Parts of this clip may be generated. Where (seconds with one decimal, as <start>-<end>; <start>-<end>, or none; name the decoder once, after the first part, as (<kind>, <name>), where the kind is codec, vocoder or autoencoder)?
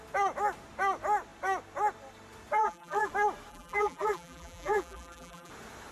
2.6-3.1 (vocoder, BigVGAN v2); 3.5-5.5